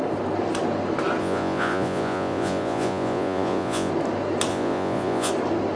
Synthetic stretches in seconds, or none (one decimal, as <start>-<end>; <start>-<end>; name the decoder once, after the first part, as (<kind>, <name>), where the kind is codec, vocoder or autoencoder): 1.2-3.9 (vocoder, Vocos); 4.5-5.3